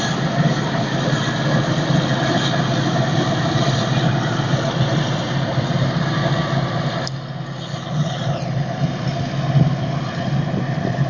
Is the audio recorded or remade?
recorded